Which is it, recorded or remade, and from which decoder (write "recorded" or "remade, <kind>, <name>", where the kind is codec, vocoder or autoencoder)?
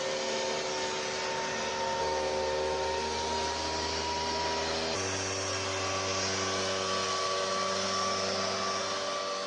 recorded